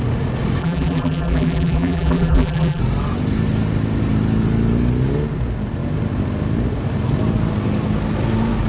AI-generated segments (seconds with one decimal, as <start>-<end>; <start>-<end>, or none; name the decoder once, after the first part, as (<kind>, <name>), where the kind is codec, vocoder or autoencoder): 0.6-2.8 (vocoder, BigVGAN v2)